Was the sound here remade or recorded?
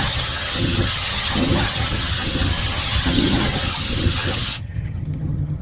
remade